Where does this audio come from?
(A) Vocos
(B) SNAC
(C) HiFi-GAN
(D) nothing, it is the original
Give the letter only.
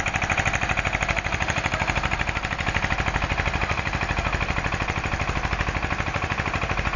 D